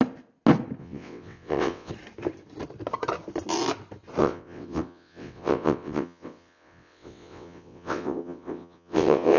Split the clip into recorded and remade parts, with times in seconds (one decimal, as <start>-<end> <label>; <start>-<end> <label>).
0.0-0.8 recorded; 0.8-1.9 remade; 1.9-4.2 recorded; 4.2-9.4 remade